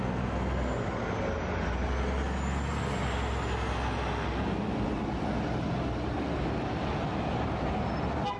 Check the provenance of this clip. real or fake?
real